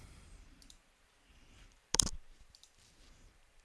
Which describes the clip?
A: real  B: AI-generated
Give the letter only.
B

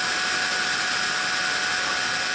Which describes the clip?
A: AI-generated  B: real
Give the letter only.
B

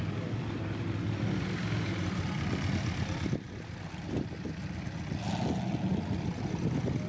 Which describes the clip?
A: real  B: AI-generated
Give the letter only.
A